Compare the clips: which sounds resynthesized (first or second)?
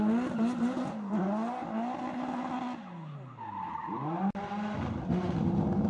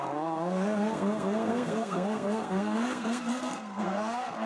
second